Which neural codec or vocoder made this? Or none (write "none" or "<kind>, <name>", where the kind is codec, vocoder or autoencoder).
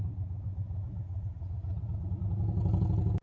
none